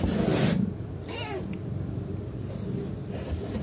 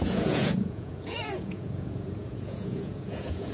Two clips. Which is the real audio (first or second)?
first